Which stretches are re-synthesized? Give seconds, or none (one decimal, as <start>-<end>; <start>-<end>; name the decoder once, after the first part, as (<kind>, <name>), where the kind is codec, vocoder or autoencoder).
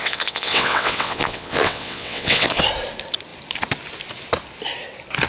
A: 0.0-2.6 (vocoder, WaveNeXt)